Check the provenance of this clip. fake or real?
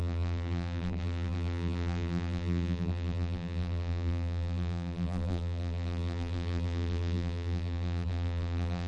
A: fake